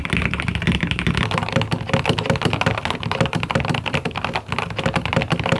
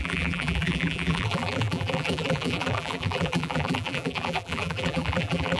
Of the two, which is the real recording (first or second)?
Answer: first